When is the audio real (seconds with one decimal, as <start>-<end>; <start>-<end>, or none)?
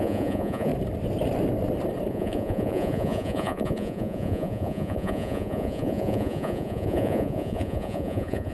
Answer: 0.7-2.1